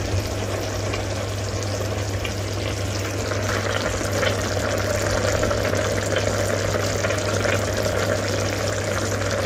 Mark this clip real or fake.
real